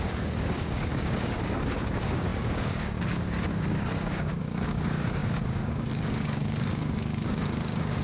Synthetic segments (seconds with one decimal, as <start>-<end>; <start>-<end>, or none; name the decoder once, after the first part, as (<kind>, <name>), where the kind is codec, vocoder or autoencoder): 0.0-8.0 (codec, DAC)